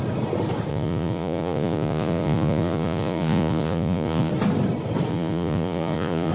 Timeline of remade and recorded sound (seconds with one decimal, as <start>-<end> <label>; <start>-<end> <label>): 0.0-0.7 recorded; 0.7-4.3 remade; 4.3-5.1 recorded; 5.1-6.3 remade